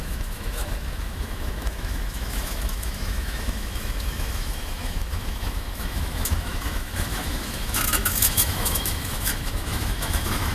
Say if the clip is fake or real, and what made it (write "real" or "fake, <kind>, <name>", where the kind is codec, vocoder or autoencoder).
fake, autoencoder, DAC-VAE